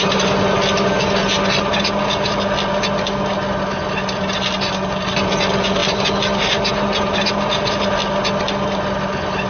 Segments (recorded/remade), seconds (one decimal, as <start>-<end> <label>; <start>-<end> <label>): 0.0-9.5 recorded